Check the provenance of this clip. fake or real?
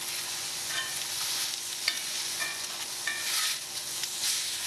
fake